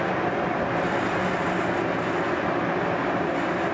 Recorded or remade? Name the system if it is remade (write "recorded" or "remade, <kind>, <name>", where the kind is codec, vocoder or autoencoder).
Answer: recorded